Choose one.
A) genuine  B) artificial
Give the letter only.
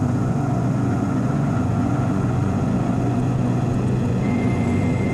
B